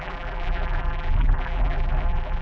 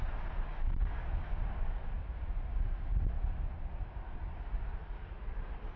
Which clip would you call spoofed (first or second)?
first